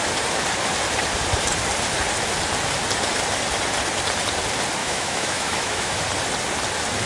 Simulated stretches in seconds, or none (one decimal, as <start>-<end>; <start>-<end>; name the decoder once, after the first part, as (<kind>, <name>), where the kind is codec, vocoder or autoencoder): 4.8-6.0 (autoencoder, DAC-VAE)